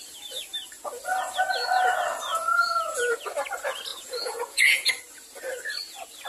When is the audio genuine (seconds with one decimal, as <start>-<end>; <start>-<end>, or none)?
0.0-2.3; 3.2-3.9; 4.9-6.3